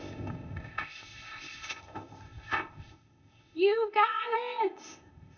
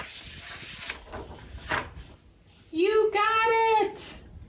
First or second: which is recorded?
second